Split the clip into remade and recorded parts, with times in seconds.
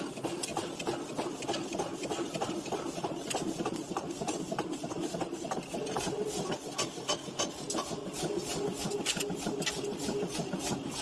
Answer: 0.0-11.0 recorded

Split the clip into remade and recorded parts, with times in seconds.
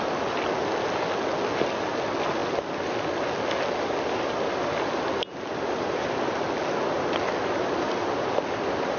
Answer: 0.0-9.0 recorded